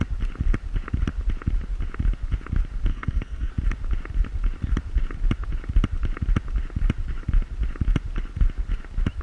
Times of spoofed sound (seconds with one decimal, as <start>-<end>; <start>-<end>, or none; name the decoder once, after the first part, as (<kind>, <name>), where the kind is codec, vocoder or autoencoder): 2.9-3.5 (codec, SNAC)